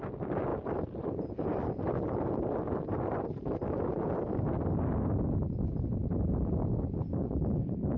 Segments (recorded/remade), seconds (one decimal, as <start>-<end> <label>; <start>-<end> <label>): 0.0-8.0 recorded